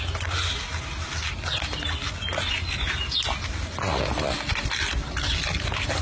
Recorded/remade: recorded